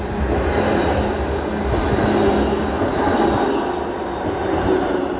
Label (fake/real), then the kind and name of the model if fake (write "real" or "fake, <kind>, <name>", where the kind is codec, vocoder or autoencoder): real